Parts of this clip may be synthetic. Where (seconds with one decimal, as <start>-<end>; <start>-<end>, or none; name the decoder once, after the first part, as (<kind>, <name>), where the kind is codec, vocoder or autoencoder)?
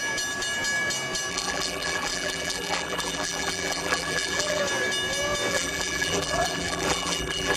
1.3-4.6 (vocoder, BigVGAN v2); 5.5-7.6